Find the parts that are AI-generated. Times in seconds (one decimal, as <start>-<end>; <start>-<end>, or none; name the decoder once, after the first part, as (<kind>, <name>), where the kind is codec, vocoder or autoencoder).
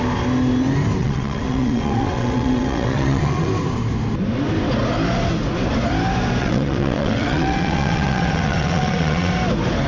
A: 1.0-3.5 (vocoder, WaveNeXt); 6.4-9.3